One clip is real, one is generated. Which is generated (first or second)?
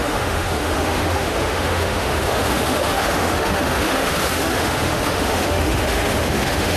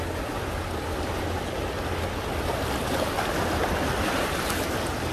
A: first